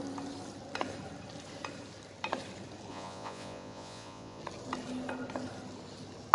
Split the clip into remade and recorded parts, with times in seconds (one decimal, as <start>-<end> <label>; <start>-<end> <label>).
0.0-2.9 recorded; 2.9-4.4 remade; 4.4-6.3 recorded

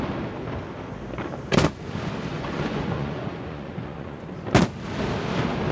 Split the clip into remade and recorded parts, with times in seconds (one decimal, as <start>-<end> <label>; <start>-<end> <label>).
0.0-2.3 recorded; 2.3-4.3 remade; 4.3-5.7 recorded

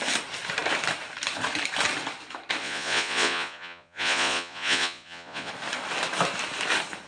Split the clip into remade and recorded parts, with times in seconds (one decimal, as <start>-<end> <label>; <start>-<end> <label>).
0.0-2.6 recorded; 2.6-5.5 remade; 5.5-7.1 recorded